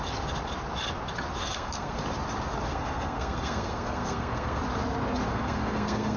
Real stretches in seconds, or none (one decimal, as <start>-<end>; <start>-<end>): 0.0-1.4; 2.0-2.7; 4.6-5.3